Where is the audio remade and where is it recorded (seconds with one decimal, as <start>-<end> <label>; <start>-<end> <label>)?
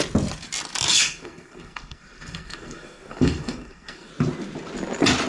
0.0-0.9 recorded; 0.9-4.1 remade; 4.1-5.3 recorded